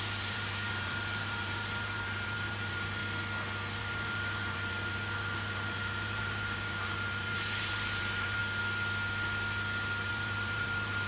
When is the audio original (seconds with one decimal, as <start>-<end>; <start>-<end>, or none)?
3.0-3.8; 8.4-10.1